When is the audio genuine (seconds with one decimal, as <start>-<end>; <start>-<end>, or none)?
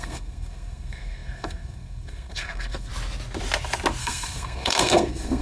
2.9-4.0